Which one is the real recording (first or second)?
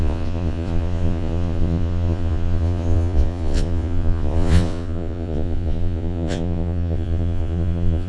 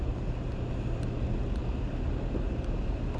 second